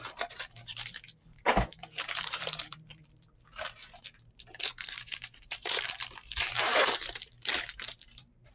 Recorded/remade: remade